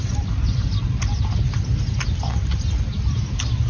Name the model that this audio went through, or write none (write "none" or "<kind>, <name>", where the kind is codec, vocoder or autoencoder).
none